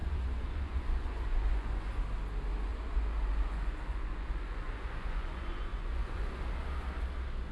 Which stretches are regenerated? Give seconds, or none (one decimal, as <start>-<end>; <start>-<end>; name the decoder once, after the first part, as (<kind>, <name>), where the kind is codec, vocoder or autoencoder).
0.0-2.0 (vocoder, Vocos); 2.7-6.4